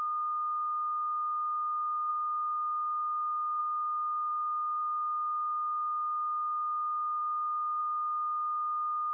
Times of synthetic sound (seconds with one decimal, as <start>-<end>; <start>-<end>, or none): 2.1-3.6; 4.3-4.8; 7.2-7.8